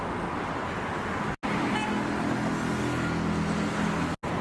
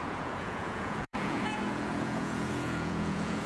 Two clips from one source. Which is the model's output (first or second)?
second